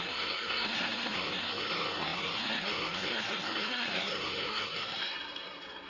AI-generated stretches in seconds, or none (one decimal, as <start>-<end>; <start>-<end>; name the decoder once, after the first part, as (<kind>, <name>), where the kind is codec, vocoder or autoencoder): 0.0-5.9 (codec, SNAC)

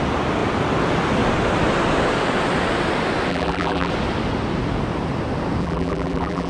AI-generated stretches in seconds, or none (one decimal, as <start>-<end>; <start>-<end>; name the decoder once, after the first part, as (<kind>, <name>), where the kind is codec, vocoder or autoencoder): 3.3-3.9 (vocoder, BigVGAN v2); 5.6-6.5